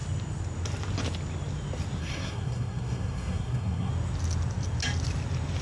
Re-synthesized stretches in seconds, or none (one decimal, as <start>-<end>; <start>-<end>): 2.0-3.9